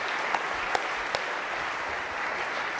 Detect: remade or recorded recorded